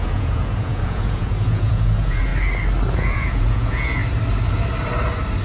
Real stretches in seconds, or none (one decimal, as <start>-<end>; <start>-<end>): 2.3-2.9; 4.0-5.4